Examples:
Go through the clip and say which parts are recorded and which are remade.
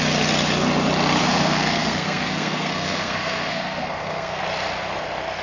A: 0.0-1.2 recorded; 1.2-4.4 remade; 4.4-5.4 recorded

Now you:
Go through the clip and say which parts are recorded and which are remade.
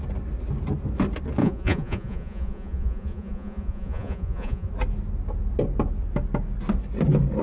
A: 0.0-1.4 recorded; 1.4-4.7 remade; 4.7-7.4 recorded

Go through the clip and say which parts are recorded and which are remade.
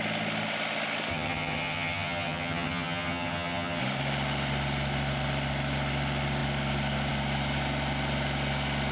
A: 0.0-1.1 recorded; 1.1-3.8 remade; 3.8-8.9 recorded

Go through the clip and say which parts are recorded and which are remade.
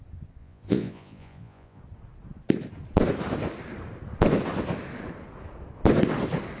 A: 0.0-0.4 recorded; 0.4-1.8 remade; 1.8-6.6 recorded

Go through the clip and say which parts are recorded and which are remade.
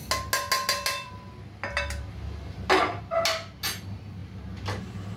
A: 0.0-5.2 recorded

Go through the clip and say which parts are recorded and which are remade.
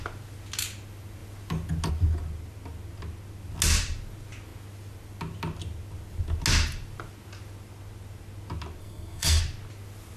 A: 0.0-8.8 recorded; 8.8-9.4 remade; 9.4-10.2 recorded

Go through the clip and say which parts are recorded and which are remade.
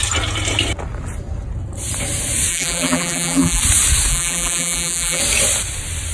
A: 0.0-2.5 recorded; 2.5-3.6 remade; 3.6-4.1 recorded; 4.1-5.2 remade; 5.2-6.1 recorded